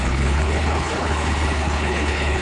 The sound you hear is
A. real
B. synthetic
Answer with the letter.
B